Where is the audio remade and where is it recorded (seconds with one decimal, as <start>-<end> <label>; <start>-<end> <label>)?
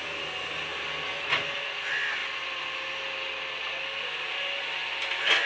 0.0-0.7 recorded; 0.7-1.3 remade; 1.3-5.5 recorded